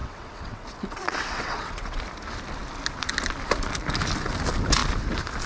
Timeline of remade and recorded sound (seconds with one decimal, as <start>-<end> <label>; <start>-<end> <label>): 0.0-2.0 remade; 2.0-5.5 recorded

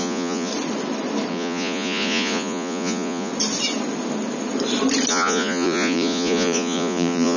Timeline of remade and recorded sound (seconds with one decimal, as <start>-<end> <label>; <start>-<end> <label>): 0.0-0.5 remade; 0.5-1.3 recorded; 1.3-3.3 remade; 3.3-5.1 recorded; 5.1-7.4 remade

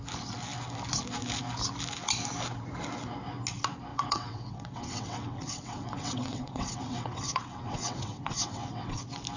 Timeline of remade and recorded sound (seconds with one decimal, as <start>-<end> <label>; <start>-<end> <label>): 0.0-3.9 recorded; 3.9-9.0 remade; 9.0-9.4 recorded

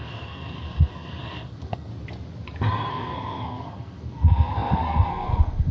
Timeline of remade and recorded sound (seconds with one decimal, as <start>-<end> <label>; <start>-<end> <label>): 0.0-1.9 remade; 1.9-2.9 recorded; 2.9-5.7 remade

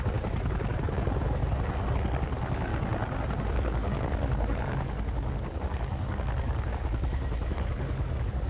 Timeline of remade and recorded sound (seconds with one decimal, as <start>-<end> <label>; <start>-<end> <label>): 0.0-1.4 remade; 1.4-1.9 recorded; 1.9-2.7 remade; 2.7-3.4 recorded; 3.4-8.5 remade